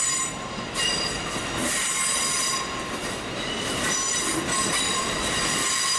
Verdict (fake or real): fake